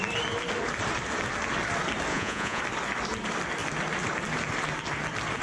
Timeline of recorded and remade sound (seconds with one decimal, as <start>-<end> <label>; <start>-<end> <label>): 0.0-2.1 recorded; 2.1-2.6 remade; 2.6-5.4 recorded